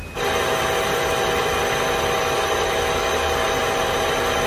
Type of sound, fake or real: real